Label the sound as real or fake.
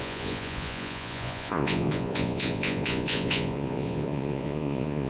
fake